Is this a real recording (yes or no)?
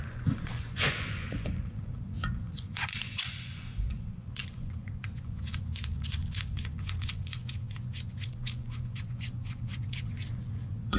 no